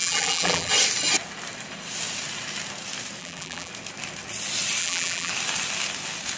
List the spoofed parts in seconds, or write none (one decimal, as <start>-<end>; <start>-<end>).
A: 0.0-0.7; 3.2-3.7; 4.8-5.3